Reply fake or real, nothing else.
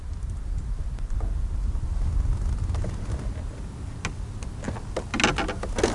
real